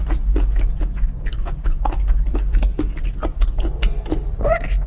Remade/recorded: recorded